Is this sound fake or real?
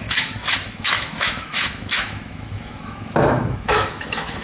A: fake